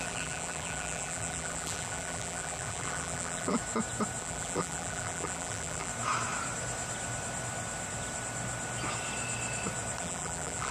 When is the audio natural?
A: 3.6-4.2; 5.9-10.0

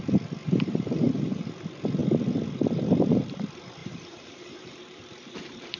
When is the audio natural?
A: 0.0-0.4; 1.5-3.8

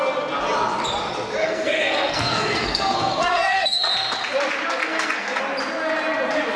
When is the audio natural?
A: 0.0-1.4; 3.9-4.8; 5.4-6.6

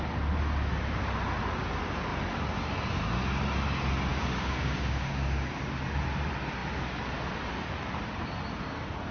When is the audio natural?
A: 0.0-4.1; 5.5-9.1